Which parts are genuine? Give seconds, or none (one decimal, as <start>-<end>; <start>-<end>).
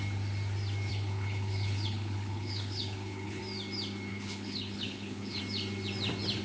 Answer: 0.0-0.9; 3.4-4.1; 5.4-6.4